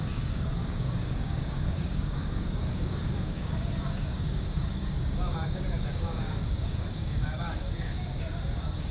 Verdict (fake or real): fake